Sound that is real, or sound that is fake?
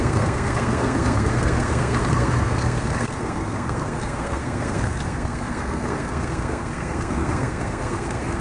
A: fake